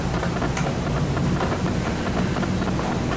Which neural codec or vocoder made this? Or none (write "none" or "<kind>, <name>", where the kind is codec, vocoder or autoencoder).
none